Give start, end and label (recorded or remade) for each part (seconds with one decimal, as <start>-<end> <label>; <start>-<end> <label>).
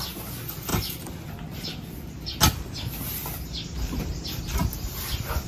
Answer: 0.0-5.5 recorded